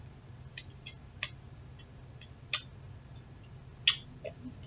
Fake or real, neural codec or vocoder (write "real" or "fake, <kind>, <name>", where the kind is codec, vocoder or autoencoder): real